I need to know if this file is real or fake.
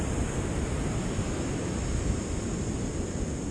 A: real